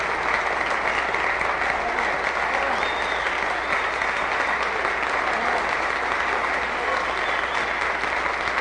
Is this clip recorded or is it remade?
recorded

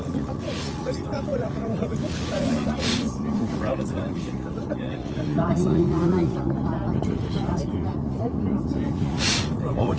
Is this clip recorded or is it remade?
remade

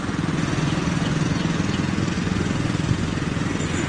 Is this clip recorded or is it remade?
remade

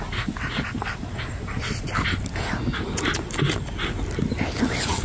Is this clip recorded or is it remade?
recorded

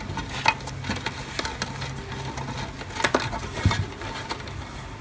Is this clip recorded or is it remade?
recorded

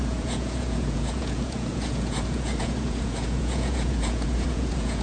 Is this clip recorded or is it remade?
remade